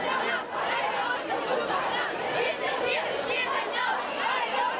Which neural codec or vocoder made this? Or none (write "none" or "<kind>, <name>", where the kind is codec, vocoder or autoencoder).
none